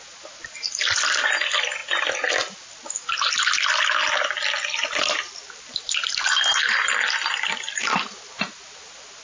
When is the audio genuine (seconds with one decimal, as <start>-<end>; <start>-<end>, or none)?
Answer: 0.0-9.2